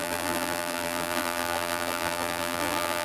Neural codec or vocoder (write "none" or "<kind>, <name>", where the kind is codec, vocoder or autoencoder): vocoder, BigVGAN v2